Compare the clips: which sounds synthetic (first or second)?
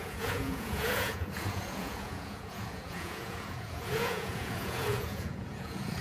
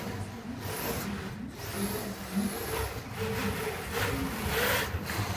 first